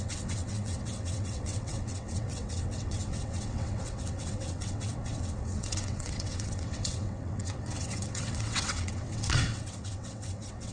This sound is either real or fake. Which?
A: fake